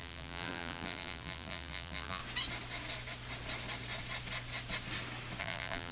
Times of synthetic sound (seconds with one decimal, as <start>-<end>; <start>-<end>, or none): 0.0-2.2; 5.4-5.9